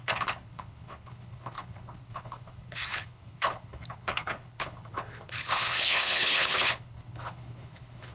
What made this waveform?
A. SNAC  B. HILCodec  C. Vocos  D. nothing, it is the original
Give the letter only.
B